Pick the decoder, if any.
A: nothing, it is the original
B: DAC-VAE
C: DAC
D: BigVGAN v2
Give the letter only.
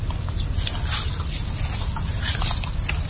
A